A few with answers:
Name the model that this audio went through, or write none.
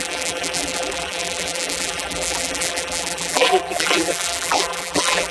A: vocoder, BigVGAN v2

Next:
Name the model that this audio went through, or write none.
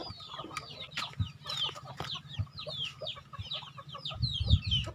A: none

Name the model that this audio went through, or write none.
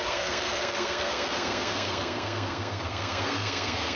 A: codec, SNAC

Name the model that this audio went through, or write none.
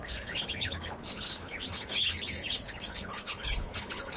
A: codec, HILCodec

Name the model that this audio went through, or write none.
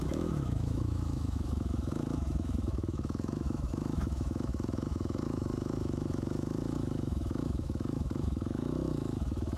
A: autoencoder, DAC-VAE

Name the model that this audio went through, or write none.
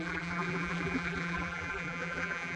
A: vocoder, BigVGAN v2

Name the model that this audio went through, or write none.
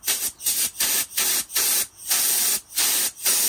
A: vocoder, BigVGAN v2